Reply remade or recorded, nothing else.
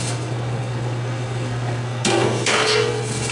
remade